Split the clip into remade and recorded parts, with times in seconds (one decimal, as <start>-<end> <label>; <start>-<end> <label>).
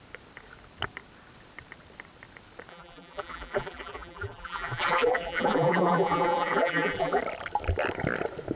0.0-2.7 recorded; 2.7-7.2 remade; 7.2-8.6 recorded